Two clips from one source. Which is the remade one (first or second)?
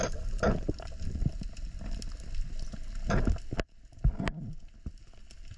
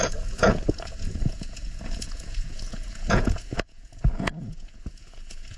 second